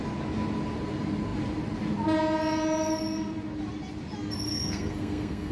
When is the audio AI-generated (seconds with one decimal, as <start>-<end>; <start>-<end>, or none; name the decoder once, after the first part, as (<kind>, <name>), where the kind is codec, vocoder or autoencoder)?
4.5-5.5 (codec, SNAC)